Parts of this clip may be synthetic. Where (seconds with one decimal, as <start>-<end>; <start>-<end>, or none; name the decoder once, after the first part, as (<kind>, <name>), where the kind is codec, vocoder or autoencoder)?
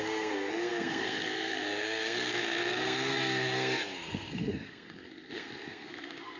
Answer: 0.0-6.4 (codec, SNAC)